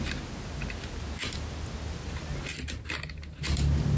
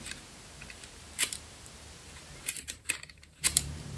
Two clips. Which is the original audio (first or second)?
first